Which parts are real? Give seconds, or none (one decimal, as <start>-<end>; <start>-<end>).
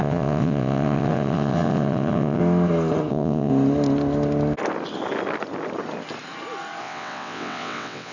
2.4-3.1; 3.5-6.8